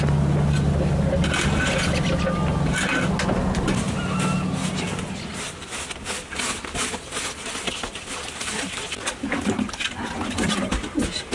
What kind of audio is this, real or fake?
real